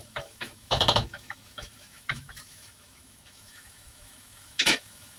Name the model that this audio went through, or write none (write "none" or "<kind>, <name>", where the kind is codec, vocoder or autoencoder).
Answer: autoencoder, DAC-VAE